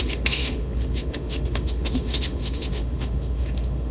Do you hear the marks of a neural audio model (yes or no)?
yes